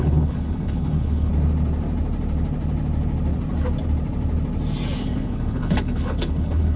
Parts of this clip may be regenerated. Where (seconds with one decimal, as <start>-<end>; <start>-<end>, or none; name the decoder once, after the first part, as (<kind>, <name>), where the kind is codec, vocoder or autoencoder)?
0.0-1.3 (codec, HILCodec); 5.0-6.8